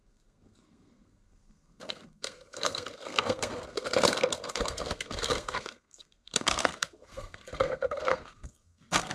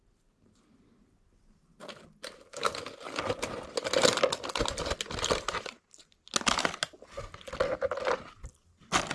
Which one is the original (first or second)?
second